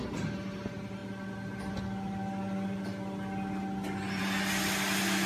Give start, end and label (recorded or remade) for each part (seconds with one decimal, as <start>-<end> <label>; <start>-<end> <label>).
0.0-5.3 recorded